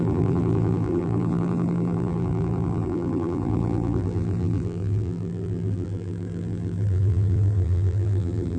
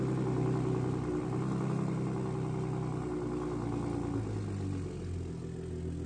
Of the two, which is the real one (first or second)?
second